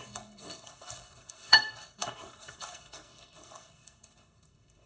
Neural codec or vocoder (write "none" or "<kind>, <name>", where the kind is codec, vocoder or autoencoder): codec, SNAC